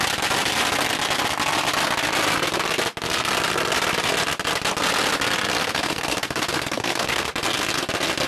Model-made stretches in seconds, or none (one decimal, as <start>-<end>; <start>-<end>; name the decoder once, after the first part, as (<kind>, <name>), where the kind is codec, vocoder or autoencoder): 5.6-7.3 (codec, SNAC)